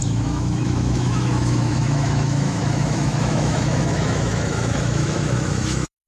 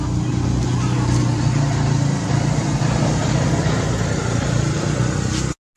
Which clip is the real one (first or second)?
second